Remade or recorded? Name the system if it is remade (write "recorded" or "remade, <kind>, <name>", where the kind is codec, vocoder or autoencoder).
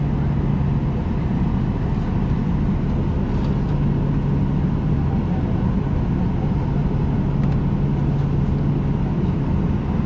recorded